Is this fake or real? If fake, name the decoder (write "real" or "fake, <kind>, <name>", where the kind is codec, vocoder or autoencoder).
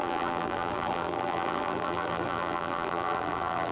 fake, vocoder, BigVGAN v2